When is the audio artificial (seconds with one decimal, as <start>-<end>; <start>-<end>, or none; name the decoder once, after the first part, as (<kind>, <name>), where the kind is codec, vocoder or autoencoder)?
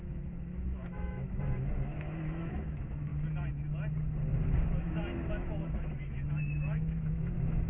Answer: 0.0-3.1 (autoencoder, DAC-VAE); 5.3-7.7